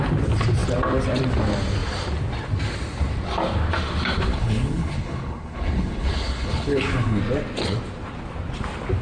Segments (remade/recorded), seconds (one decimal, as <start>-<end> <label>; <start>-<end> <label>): 0.0-4.3 recorded; 4.3-7.2 remade; 7.2-9.0 recorded